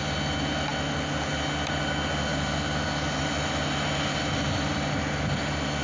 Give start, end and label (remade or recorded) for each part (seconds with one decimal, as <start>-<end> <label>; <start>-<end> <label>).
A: 0.0-5.8 recorded